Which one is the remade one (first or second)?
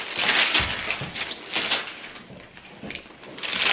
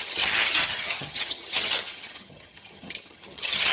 second